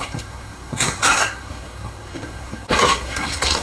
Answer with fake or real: fake